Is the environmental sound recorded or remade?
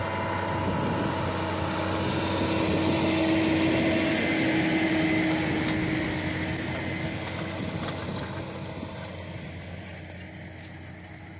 recorded